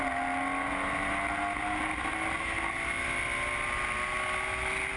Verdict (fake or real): real